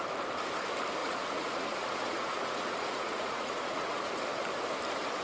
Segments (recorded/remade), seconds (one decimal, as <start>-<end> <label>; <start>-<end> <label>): 0.0-1.0 recorded; 1.0-4.1 remade; 4.1-5.2 recorded